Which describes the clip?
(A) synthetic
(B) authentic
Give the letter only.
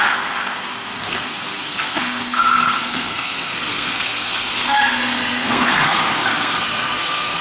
A